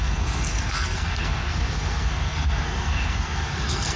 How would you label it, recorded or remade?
remade